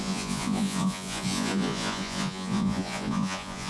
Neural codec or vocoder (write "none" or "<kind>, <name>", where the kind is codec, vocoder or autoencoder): vocoder, Vocos